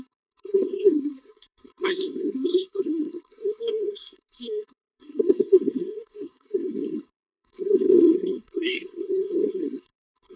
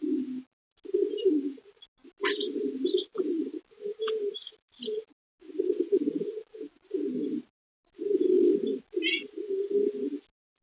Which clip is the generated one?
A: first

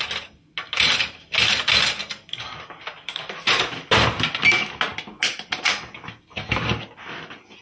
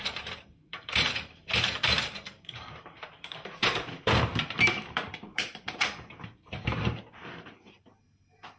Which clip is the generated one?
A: second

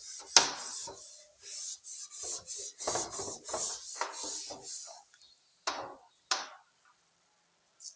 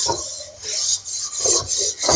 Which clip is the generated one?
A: second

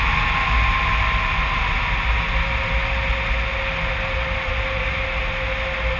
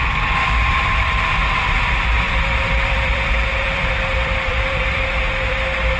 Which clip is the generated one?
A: second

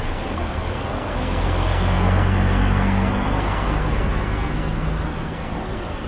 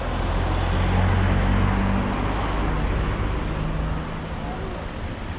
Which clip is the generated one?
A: first